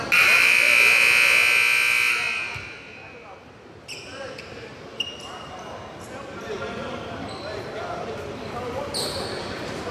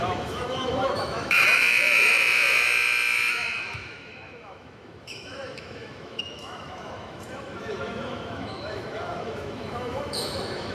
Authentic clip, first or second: first